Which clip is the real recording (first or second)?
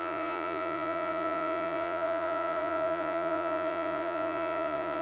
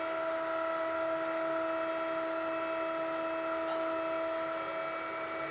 second